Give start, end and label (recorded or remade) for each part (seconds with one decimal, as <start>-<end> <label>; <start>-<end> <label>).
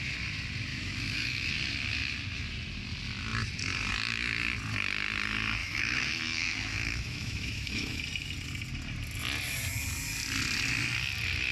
0.0-0.7 recorded; 0.7-1.5 remade; 1.5-5.6 recorded; 5.6-8.0 remade; 8.0-11.5 recorded